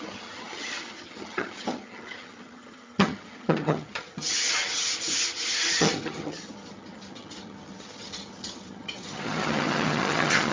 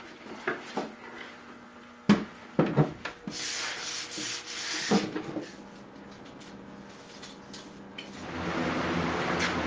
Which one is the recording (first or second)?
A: second